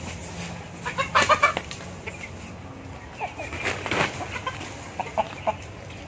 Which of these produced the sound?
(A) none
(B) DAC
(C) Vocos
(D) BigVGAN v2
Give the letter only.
A